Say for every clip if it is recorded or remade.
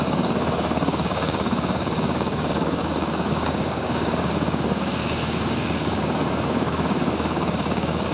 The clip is remade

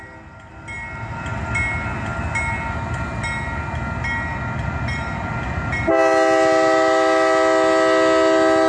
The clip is recorded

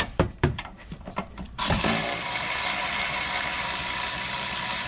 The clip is remade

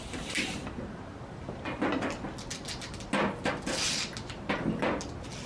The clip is recorded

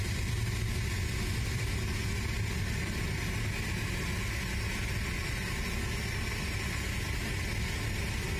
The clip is recorded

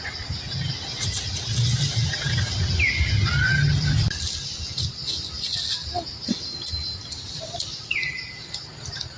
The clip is recorded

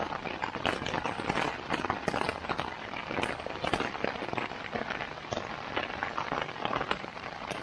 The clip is recorded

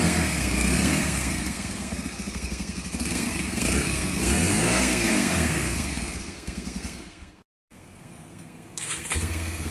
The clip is remade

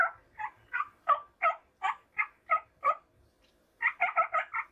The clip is recorded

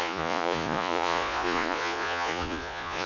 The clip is remade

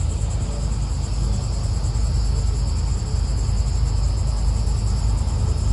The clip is recorded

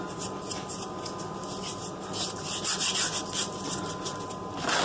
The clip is recorded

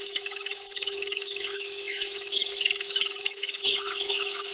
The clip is remade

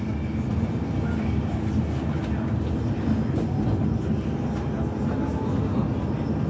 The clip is recorded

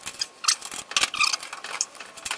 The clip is recorded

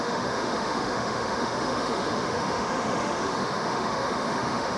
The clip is remade